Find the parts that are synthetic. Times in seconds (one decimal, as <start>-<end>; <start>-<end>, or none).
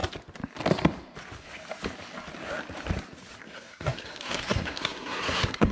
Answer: 3.4-5.7